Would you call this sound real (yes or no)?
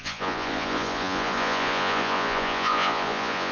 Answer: no